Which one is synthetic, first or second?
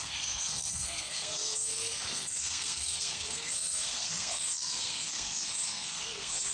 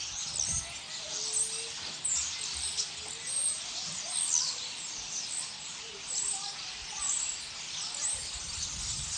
first